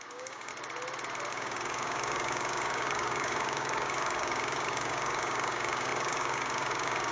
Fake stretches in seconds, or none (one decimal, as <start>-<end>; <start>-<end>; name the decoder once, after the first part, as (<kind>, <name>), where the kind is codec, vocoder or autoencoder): 0.0-0.5 (codec, DAC); 1.3-7.1